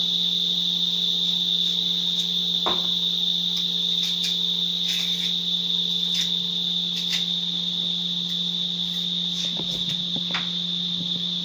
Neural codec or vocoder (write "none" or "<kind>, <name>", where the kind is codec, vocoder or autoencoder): none